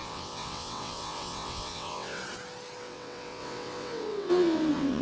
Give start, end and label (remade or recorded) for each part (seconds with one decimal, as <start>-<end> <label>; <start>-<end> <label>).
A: 0.0-2.2 remade; 2.2-2.8 recorded; 2.8-5.0 remade